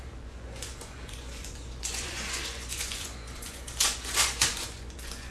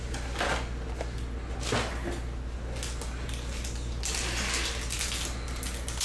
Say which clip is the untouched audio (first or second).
second